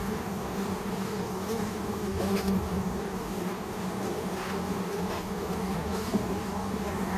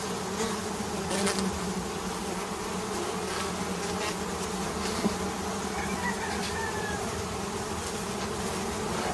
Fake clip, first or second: first